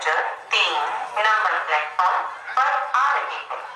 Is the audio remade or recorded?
recorded